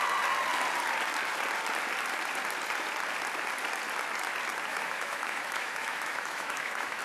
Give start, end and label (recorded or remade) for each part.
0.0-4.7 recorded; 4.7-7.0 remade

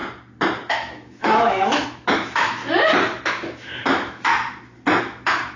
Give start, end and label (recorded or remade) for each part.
0.0-0.7 recorded; 0.7-2.6 remade; 2.6-3.3 recorded; 3.3-4.3 remade; 4.3-5.0 recorded; 5.0-5.6 remade